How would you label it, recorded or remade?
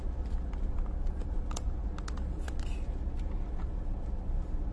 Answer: recorded